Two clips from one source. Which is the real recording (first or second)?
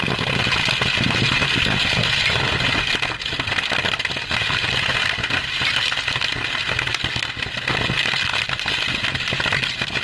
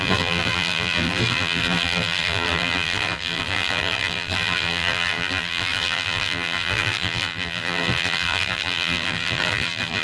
first